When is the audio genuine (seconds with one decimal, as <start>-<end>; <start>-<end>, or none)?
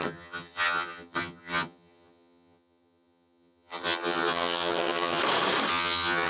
5.2-5.7